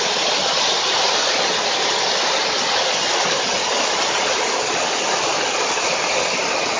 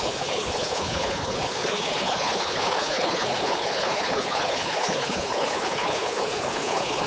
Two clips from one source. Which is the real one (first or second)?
first